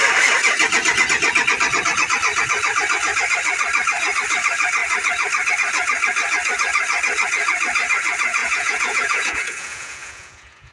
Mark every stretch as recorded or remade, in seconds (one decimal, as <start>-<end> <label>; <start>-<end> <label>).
0.0-8.4 recorded; 8.4-10.7 remade